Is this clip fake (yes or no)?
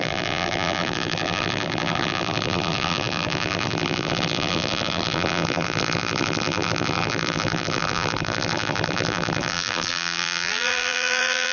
yes